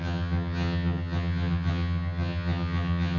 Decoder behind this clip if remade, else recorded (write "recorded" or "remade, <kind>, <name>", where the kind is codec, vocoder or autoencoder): remade, vocoder, HiFi-GAN